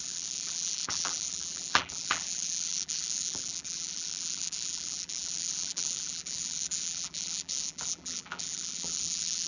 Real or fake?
fake